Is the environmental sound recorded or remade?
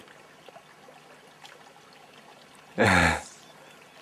recorded